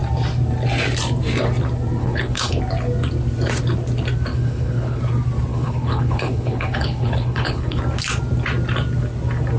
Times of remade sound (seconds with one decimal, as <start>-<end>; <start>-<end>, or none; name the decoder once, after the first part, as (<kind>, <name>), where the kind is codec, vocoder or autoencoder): 2.0-2.6 (codec, HILCodec); 4.3-5.0; 5.5-7.8